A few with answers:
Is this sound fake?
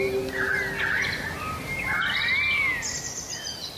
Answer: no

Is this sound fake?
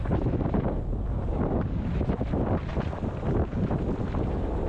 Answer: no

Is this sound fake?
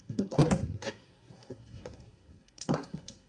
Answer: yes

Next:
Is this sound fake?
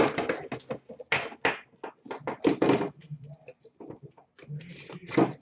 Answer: no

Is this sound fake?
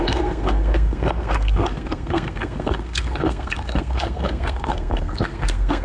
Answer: yes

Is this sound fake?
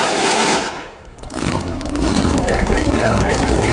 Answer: yes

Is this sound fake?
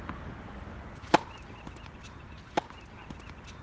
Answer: no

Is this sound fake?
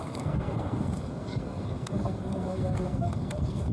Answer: yes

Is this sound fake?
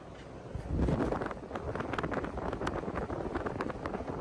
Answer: no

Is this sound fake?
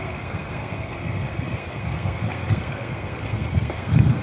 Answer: yes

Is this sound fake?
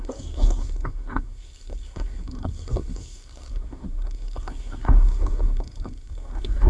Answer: yes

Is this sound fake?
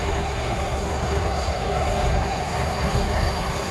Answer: yes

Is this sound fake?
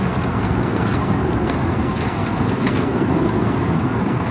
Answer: yes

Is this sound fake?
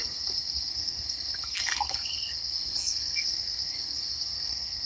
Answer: yes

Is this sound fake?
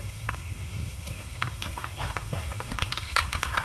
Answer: yes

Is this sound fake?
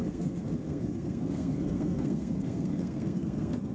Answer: yes